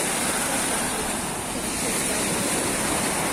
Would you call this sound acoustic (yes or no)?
yes